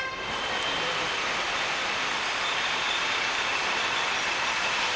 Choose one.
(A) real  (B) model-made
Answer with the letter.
B